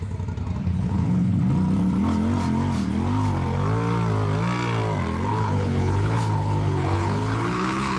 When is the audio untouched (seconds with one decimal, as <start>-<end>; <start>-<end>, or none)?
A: 0.0-0.6; 1.4-5.3